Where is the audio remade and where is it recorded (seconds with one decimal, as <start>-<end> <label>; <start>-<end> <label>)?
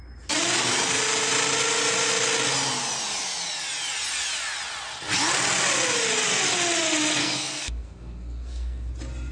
0.0-7.2 recorded; 7.2-8.9 remade; 8.9-9.3 recorded